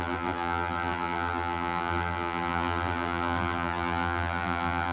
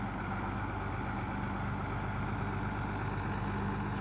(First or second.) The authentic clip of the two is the second